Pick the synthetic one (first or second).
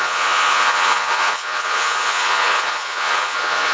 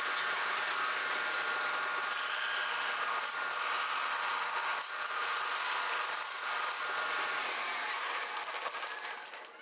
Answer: first